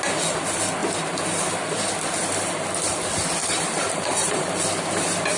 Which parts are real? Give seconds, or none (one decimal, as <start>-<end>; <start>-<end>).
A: 0.0-3.4; 4.5-5.4